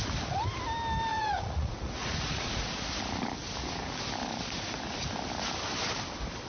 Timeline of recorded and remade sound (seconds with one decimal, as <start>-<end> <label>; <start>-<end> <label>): 0.0-1.1 recorded; 1.1-2.7 remade; 2.7-6.5 recorded